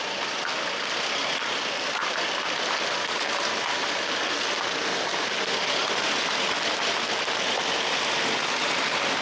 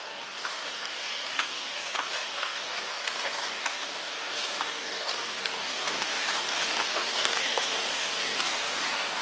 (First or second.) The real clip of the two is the first